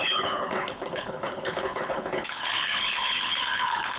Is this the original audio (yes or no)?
no